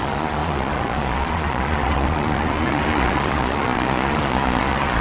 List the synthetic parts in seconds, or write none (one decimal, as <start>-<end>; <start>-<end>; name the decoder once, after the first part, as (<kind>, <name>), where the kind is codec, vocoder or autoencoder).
0.0-5.0 (vocoder, Vocos)